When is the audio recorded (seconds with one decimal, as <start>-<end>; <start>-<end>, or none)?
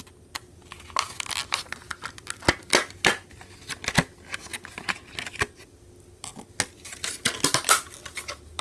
0.0-8.6